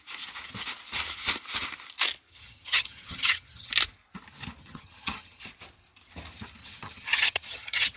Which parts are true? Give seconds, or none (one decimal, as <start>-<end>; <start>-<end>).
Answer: 0.0-2.3; 3.7-4.6; 5.4-6.6